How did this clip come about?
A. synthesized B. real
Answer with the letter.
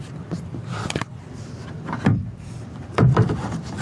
A